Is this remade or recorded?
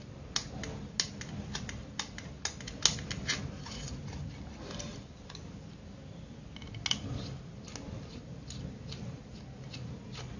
recorded